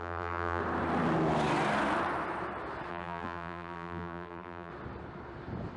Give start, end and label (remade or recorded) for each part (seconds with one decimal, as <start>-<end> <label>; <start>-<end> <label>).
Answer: 0.0-0.6 remade; 0.6-2.9 recorded; 2.9-4.7 remade; 4.7-5.8 recorded